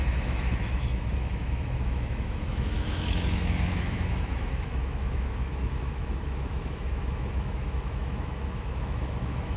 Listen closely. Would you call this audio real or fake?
fake